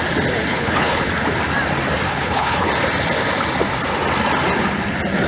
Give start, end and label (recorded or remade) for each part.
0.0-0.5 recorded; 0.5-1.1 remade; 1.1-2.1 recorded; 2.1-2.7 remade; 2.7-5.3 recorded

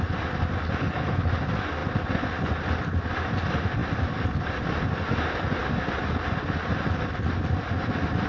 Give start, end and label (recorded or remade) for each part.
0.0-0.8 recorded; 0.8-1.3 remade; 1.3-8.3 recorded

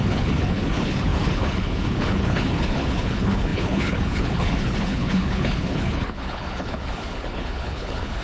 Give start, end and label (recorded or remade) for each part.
0.0-8.2 remade